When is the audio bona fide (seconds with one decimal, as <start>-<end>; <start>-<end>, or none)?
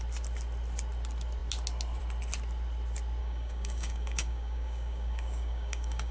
0.0-3.2